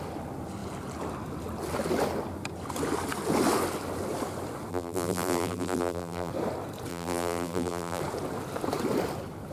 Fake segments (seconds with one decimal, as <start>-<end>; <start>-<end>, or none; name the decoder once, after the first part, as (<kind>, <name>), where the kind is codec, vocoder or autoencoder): 4.7-6.3 (vocoder, BigVGAN v2); 6.9-8.0